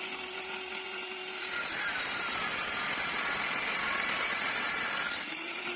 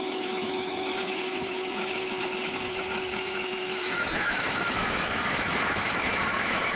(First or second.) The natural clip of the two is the first